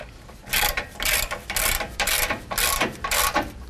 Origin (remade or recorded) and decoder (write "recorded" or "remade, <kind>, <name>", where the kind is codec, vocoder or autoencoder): remade, vocoder, BigVGAN v2